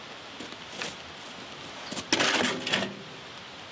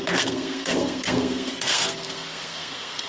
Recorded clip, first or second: first